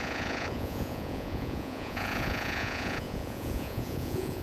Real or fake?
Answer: fake